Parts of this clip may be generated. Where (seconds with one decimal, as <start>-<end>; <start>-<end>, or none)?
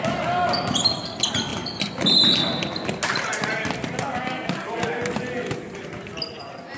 none